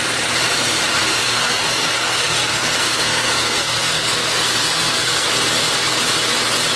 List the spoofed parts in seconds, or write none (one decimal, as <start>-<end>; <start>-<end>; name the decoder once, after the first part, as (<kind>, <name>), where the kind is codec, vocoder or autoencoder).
1.2-5.3 (codec, SNAC)

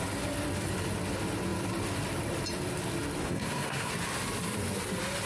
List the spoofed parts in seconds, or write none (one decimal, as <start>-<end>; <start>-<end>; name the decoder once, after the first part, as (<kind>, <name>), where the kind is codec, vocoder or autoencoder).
3.2-3.9 (codec, SNAC)

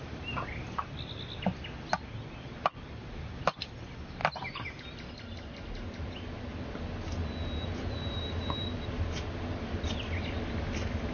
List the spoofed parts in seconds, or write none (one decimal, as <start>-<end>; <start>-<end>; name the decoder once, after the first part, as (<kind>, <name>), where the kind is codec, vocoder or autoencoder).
none